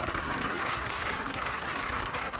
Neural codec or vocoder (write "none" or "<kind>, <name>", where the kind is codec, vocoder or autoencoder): codec, SNAC